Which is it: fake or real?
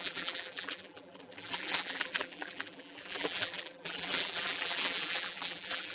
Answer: fake